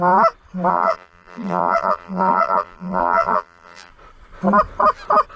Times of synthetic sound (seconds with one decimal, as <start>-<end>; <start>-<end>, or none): 0.7-3.9